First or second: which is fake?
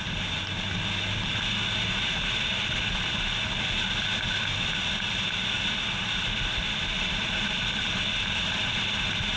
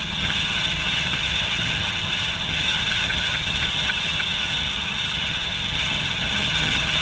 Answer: second